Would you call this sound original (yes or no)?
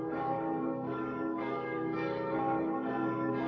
no